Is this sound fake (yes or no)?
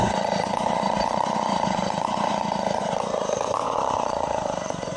yes